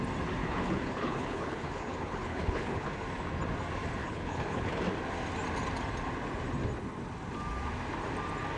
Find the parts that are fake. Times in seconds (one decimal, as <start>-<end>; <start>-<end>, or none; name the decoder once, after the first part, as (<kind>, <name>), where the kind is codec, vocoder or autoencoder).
0.4-2.9 (codec, HILCodec); 4.0-4.8